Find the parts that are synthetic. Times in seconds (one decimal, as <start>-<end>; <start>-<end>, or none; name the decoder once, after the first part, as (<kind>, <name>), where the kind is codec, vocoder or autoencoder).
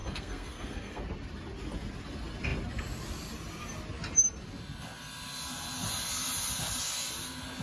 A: 0.0-1.0 (codec, SNAC)